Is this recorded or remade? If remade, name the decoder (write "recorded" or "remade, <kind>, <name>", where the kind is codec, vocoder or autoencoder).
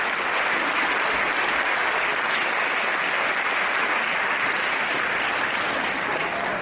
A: recorded